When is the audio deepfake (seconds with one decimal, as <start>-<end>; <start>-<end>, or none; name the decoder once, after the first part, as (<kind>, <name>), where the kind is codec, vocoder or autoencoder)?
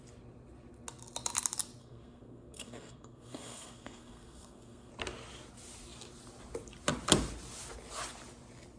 1.8-4.9 (codec, SNAC)